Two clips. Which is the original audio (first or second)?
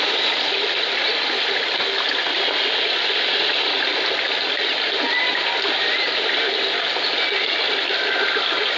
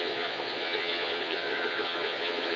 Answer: first